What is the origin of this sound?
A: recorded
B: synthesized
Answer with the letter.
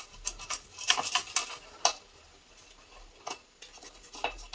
A